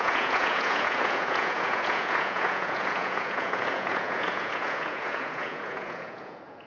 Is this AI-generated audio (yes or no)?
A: yes